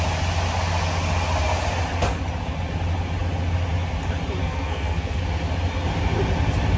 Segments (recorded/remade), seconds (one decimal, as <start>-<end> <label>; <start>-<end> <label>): 0.0-4.4 recorded; 4.4-5.2 remade; 5.2-6.8 recorded